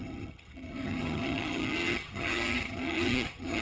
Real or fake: fake